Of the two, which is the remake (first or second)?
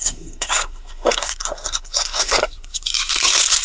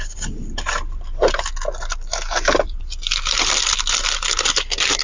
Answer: first